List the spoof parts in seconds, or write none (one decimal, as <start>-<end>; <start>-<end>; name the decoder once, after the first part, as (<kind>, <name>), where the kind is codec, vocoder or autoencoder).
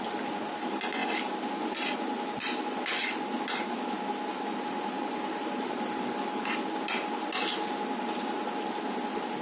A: none